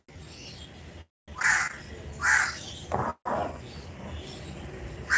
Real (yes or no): yes